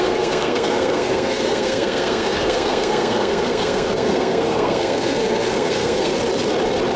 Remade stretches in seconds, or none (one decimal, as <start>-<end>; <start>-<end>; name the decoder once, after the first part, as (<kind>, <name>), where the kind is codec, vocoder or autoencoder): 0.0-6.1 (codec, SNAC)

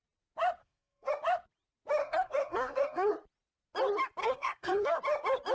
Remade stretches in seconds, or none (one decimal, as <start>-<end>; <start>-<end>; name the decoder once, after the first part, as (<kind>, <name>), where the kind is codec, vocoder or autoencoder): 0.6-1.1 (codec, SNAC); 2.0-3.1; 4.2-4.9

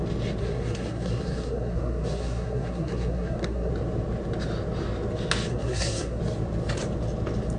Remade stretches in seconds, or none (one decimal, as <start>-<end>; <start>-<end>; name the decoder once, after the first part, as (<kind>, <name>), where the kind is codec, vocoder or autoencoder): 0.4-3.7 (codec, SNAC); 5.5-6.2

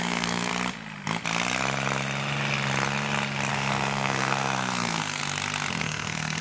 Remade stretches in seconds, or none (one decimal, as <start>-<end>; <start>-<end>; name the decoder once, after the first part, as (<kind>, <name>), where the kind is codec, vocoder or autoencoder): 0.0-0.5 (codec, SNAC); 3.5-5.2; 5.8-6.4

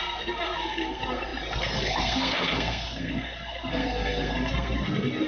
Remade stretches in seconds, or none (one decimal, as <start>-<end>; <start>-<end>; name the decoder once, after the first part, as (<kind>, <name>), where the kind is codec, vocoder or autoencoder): 0.0-5.3 (codec, SNAC)

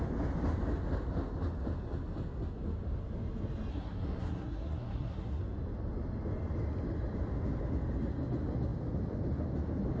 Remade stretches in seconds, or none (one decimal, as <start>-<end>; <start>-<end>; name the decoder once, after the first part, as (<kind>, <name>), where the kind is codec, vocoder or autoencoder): 3.7-5.4 (codec, SNAC)

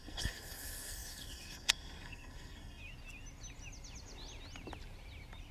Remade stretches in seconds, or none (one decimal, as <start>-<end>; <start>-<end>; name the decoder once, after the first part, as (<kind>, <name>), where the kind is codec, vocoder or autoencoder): 0.0-2.8 (codec, SNAC)

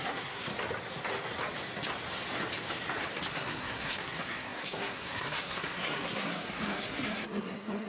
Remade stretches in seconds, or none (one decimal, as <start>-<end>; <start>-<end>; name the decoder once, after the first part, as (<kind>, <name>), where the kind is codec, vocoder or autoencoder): 0.0-0.5 (codec, SNAC); 3.3-7.9